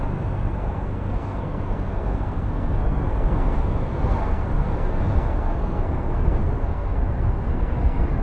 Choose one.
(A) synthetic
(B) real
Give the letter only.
A